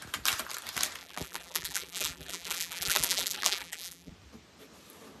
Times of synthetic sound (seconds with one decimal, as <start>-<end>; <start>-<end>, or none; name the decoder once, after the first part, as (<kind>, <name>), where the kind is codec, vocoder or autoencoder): 1.0-4.1 (vocoder, BigVGAN v2)